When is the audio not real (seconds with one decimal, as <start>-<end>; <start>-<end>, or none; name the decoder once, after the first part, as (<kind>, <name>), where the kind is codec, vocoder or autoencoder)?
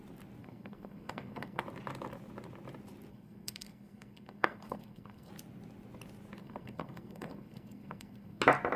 0.4-1.6 (codec, SNAC); 3.1-5.3; 6.4-8.4